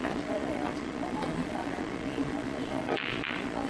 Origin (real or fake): fake